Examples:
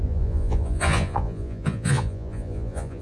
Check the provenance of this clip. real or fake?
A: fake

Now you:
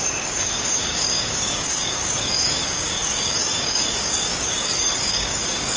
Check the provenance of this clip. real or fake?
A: fake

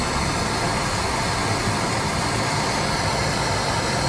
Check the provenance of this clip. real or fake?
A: real